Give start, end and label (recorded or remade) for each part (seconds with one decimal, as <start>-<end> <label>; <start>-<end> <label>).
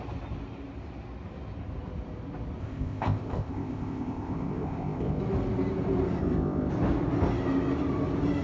0.0-2.6 recorded; 2.6-5.2 remade; 5.2-6.2 recorded; 6.2-6.7 remade; 6.7-8.4 recorded